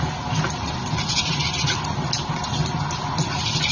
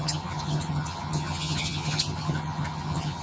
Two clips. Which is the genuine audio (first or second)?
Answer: first